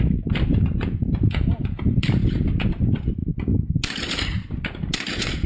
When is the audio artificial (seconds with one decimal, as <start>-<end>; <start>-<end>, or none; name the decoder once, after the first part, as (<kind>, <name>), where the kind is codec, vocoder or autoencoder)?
0.5-2.0 (vocoder, Vocos)